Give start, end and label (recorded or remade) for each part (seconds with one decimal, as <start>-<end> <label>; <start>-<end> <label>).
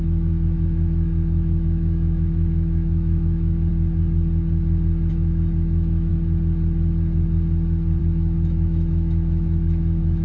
0.0-3.7 remade; 3.7-5.1 recorded; 5.1-6.1 remade; 6.1-8.0 recorded; 8.0-10.2 remade